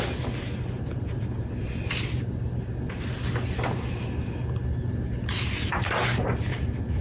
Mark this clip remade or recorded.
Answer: recorded